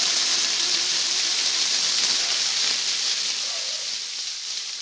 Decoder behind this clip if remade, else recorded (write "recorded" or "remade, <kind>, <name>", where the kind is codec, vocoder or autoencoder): recorded